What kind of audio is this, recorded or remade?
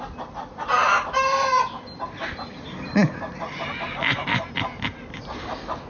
recorded